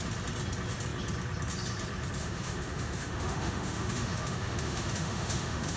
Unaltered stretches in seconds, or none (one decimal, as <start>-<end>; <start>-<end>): 0.0-2.2

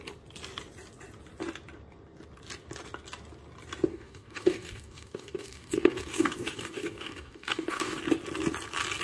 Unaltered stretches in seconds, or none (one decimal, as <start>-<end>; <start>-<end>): 0.0-3.9; 8.0-9.0

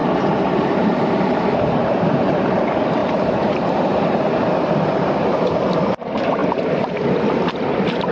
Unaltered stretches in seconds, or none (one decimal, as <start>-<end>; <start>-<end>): none

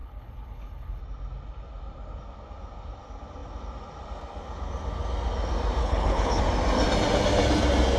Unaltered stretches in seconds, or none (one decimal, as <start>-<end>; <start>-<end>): 1.0-5.8; 6.4-8.0

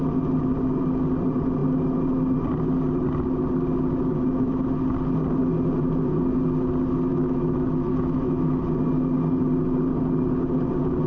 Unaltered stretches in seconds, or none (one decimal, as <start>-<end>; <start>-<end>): 0.0-4.1; 4.6-7.1; 8.7-11.1

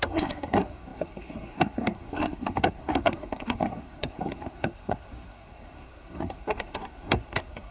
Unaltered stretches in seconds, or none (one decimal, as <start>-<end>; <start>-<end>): none